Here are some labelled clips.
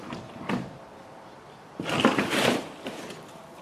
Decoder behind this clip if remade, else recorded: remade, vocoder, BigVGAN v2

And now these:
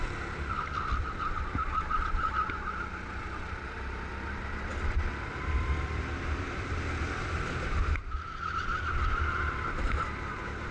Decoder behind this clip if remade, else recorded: remade, vocoder, BigVGAN v2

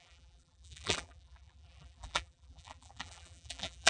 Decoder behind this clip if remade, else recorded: remade, vocoder, BigVGAN v2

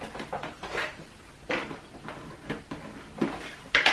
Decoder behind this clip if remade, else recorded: recorded